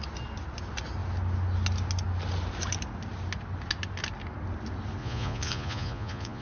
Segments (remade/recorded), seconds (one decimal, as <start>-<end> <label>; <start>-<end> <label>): 0.0-5.0 recorded; 5.0-6.4 remade